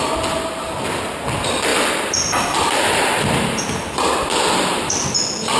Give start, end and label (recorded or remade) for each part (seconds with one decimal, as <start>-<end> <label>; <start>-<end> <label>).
0.0-5.6 recorded

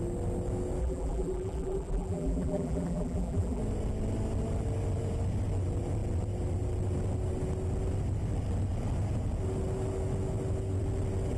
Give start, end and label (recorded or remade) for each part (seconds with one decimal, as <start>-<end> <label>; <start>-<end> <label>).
0.0-0.8 recorded; 0.8-3.6 remade; 3.6-11.4 recorded

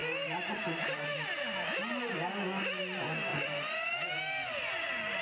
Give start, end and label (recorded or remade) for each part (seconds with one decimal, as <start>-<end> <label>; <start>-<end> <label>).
0.0-2.1 remade; 2.1-3.3 recorded; 3.3-4.2 remade; 4.2-5.2 recorded

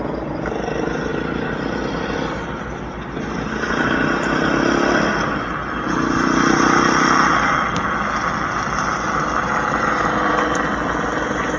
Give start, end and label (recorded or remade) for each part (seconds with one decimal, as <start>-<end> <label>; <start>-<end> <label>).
0.0-1.1 recorded; 1.1-3.5 remade; 3.5-11.6 recorded

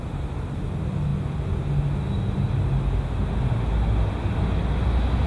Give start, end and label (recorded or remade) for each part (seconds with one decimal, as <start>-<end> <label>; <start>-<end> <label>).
0.0-5.3 recorded

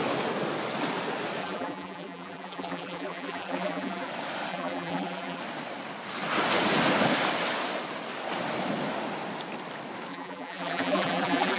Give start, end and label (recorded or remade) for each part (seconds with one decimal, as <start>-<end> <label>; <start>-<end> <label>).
0.0-1.4 recorded; 1.4-4.1 remade; 4.1-4.5 recorded; 4.5-5.4 remade; 5.4-10.1 recorded; 10.1-11.6 remade